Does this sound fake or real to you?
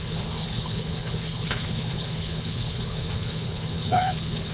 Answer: fake